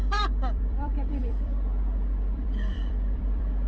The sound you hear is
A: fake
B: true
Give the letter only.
A